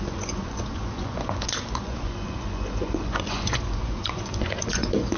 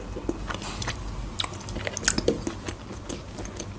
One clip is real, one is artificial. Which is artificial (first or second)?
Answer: first